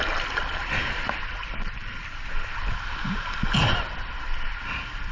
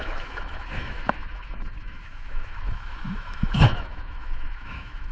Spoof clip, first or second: second